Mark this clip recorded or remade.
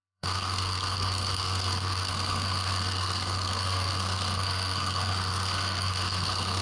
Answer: remade